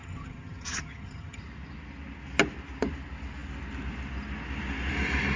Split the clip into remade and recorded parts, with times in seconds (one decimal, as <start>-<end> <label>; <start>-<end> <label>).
0.0-1.4 remade; 1.4-5.4 recorded